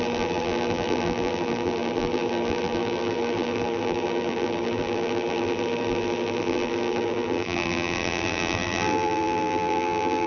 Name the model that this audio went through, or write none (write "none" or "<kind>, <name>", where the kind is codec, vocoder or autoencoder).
vocoder, BigVGAN v2